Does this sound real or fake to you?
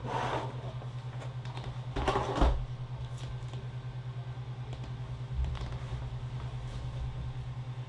real